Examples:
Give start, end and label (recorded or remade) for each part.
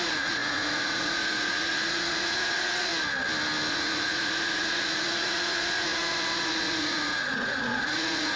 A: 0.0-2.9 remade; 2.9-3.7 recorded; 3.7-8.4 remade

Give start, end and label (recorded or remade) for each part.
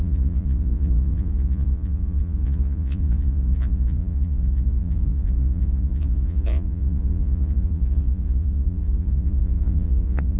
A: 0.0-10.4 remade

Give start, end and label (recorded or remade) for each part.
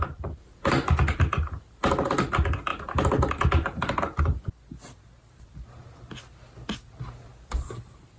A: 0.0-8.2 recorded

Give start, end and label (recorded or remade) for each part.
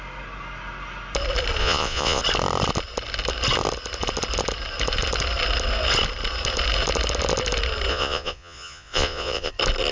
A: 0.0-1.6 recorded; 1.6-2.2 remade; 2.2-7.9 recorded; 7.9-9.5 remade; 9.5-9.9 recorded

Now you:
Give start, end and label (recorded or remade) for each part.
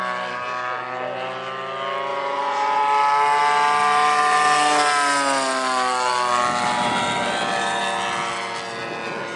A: 0.0-2.1 recorded; 2.1-2.8 remade; 2.8-9.4 recorded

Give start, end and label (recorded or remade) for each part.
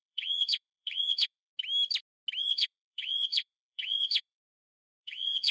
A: 0.0-1.5 remade; 1.5-2.4 recorded; 2.4-5.5 remade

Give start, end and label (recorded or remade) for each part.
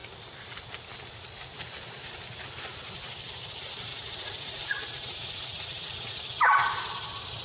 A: 0.0-3.9 recorded; 3.9-6.2 remade; 6.2-7.4 recorded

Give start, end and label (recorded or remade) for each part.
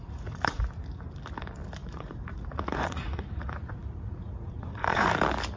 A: 0.0-0.6 remade; 0.6-1.8 recorded; 1.8-5.1 remade; 5.1-5.6 recorded